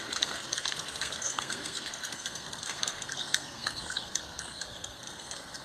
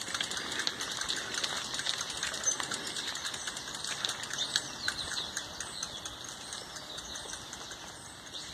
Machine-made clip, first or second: first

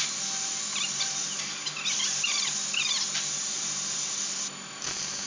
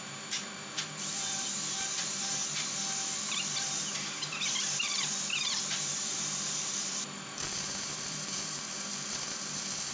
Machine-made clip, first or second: second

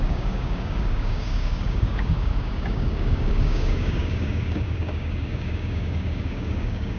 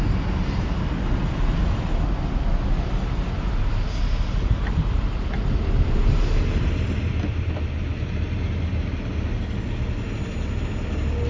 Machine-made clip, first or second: first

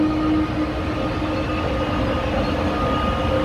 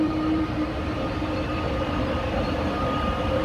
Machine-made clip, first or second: second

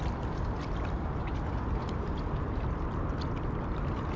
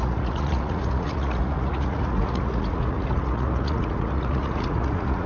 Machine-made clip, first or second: second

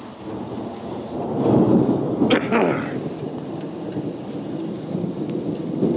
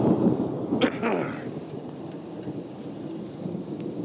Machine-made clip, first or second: second